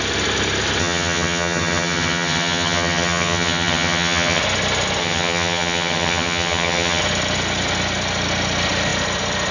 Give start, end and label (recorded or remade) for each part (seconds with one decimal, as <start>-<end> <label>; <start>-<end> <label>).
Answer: 0.0-0.8 recorded; 0.8-4.4 remade; 4.4-5.0 recorded; 5.0-7.0 remade; 7.0-9.5 recorded